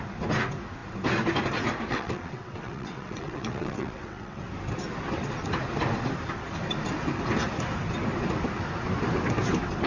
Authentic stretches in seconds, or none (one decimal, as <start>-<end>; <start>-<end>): 0.0-1.9; 4.4-9.9